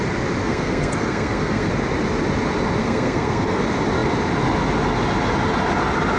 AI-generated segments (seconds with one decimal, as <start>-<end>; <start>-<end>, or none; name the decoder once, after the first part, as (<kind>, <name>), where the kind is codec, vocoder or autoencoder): 0.4-1.7 (codec, SNAC); 2.8-3.6